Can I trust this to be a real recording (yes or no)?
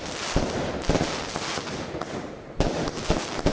yes